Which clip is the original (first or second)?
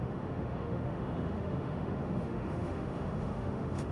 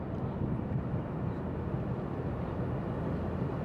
second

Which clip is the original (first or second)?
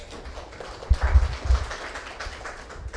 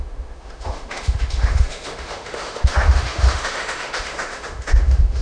first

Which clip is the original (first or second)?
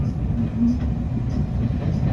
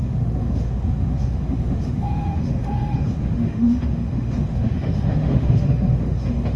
first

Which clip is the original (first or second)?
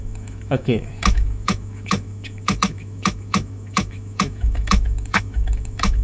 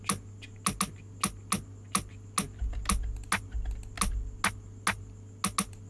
second